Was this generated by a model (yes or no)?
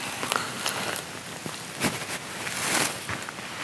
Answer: no